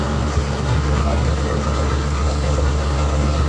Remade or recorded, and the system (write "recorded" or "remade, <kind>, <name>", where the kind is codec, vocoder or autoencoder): remade, codec, SNAC